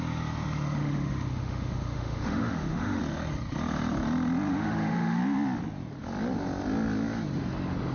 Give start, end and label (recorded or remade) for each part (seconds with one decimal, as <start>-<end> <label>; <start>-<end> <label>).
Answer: 0.0-0.8 recorded; 0.8-3.0 remade; 3.0-4.5 recorded; 4.5-5.2 remade; 5.2-7.9 recorded